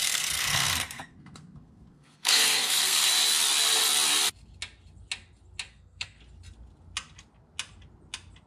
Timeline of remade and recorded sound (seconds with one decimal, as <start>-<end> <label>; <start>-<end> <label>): 0.0-3.1 remade; 3.1-5.7 recorded; 5.7-6.2 remade; 6.2-8.5 recorded